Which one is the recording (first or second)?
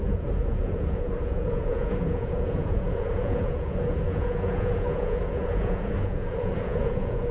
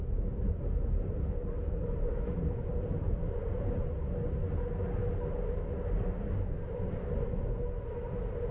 second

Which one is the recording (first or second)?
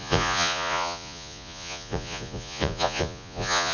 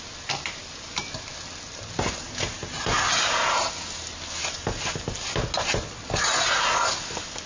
second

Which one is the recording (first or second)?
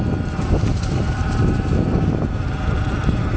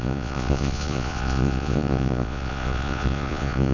first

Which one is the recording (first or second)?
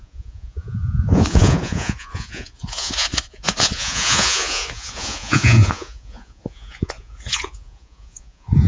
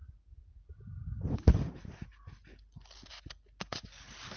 second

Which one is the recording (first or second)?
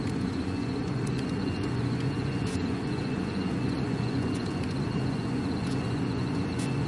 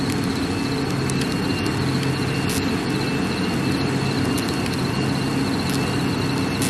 second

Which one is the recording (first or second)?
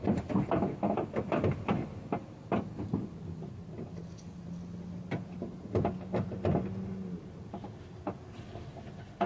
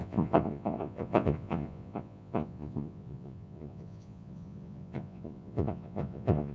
first